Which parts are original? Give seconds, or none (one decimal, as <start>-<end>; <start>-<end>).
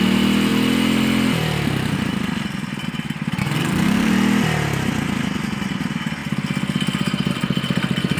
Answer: 0.0-3.4; 4.1-8.2